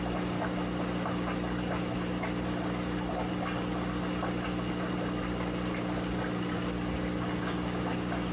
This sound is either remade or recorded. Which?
recorded